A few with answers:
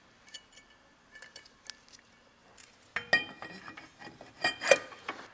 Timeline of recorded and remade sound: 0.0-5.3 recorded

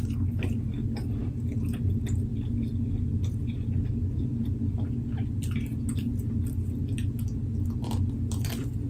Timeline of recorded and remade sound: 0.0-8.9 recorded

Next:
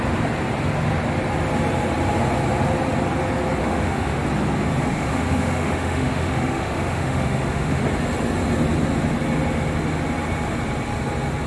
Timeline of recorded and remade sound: 0.0-3.6 recorded; 3.6-4.2 remade; 4.2-4.9 recorded; 4.9-7.8 remade; 7.8-11.5 recorded

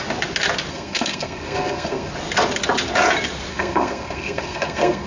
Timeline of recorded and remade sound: 0.0-0.7 recorded; 0.7-2.1 remade; 2.1-3.5 recorded; 3.5-5.1 remade

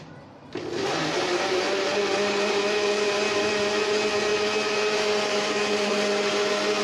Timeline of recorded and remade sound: 0.0-6.8 recorded

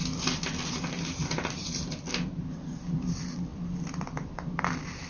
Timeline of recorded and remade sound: 0.0-0.7 recorded; 0.7-5.1 remade

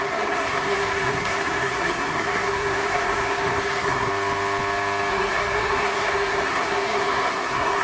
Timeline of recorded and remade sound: 0.0-4.1 remade; 4.1-5.1 recorded; 5.1-7.8 remade